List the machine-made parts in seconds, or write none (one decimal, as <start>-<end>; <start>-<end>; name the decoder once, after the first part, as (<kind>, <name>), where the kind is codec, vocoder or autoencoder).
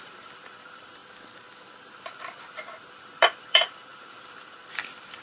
0.0-1.0 (vocoder, BigVGAN v2); 3.0-5.2